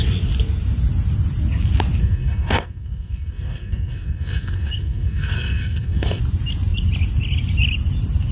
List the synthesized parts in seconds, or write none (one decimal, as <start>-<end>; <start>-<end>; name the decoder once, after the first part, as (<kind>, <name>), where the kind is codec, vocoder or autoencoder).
2.0-6.2 (codec, SNAC)